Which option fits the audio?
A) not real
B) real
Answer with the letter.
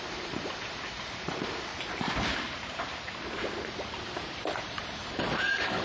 A